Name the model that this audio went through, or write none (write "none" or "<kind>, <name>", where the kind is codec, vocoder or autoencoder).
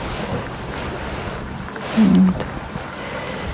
none